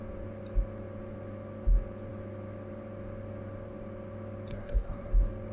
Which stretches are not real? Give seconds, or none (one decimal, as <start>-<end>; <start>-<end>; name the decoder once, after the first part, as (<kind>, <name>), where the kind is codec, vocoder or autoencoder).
4.5-5.1 (codec, SNAC)